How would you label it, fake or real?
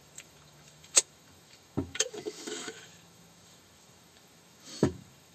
fake